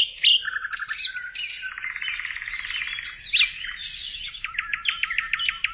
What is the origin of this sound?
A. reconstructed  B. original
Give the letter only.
B